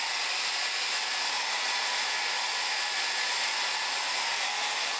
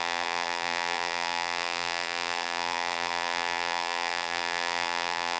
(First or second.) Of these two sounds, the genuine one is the first